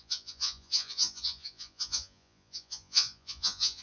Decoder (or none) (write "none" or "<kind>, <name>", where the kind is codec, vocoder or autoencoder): vocoder, Vocos